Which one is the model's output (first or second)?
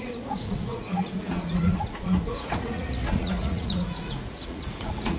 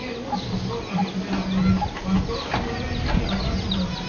first